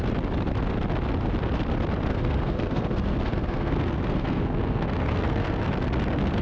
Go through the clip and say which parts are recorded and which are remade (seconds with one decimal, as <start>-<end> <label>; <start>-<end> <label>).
0.0-2.1 recorded; 2.1-5.7 remade; 5.7-6.4 recorded